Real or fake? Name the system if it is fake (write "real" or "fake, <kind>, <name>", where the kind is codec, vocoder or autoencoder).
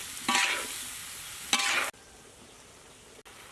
real